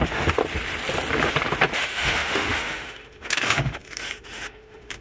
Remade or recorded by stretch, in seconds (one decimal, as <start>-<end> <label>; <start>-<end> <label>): 0.0-0.4 remade; 0.4-1.8 recorded; 1.8-5.0 remade